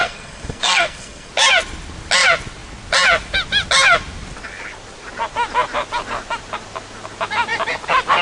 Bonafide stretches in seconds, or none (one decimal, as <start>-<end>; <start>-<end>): 1.3-8.2